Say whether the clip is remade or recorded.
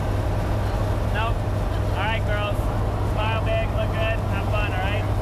recorded